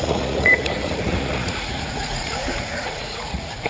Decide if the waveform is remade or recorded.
remade